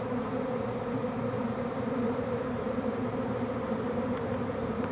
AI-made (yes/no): yes